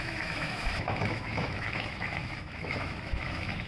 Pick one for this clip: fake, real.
fake